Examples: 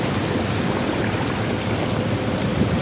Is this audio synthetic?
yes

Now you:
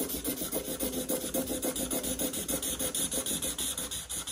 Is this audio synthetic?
no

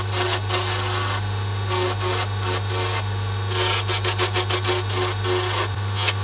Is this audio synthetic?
no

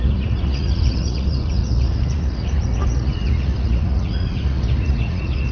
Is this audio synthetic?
yes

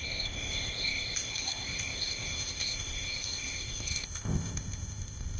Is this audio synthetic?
yes